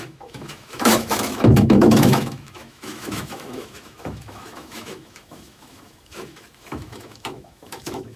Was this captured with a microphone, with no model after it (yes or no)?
no